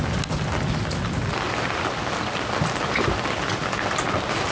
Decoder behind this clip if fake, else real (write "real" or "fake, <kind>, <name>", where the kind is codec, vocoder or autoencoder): real